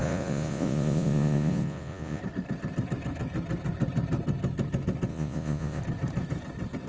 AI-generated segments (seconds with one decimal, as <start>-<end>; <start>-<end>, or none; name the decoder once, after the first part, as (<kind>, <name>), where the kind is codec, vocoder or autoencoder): 0.0-2.2 (vocoder, Vocos); 5.1-5.8